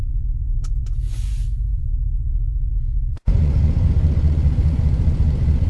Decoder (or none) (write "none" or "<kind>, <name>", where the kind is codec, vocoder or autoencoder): vocoder, Vocos